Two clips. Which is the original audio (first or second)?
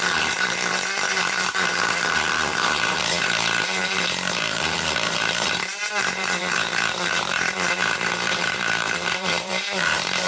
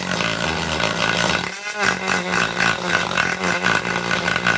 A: second